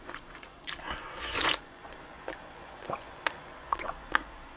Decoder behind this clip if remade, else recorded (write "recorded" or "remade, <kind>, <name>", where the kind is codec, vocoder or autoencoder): remade, vocoder, Vocos